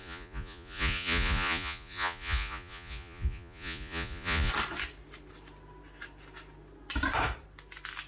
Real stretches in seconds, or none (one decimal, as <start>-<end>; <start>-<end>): 4.5-8.1